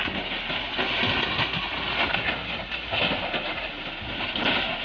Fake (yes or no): no